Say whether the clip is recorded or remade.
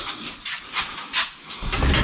recorded